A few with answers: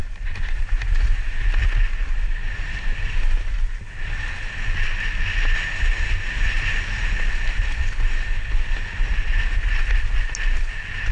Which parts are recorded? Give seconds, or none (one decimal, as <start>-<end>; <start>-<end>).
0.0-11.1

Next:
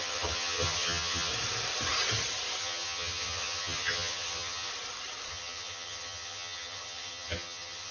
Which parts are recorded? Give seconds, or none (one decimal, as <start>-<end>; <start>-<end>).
1.3-2.6; 4.7-5.3

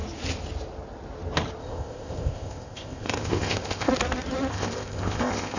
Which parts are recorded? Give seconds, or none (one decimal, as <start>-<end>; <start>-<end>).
0.0-1.6; 3.9-4.5

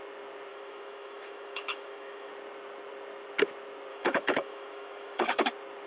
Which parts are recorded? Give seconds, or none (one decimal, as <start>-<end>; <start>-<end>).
0.0-0.5; 2.3-3.9; 5.5-5.9

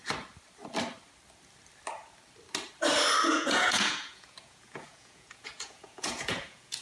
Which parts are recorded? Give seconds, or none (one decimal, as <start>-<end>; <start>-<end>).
0.0-3.3